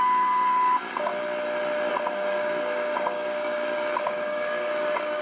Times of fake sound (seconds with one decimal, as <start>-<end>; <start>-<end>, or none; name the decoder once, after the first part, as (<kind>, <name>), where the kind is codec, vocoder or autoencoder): 0.0-1.1 (codec, DAC); 1.9-5.2